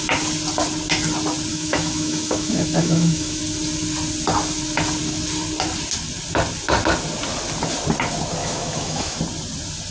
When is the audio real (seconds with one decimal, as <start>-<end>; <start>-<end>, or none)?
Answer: 0.0-1.5; 3.4-8.4; 9.2-9.9